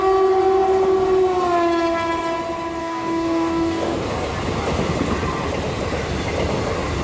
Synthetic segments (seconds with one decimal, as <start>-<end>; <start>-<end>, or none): 2.8-4.0